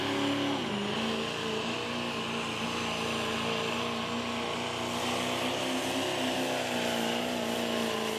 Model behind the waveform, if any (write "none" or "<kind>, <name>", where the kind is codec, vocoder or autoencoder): none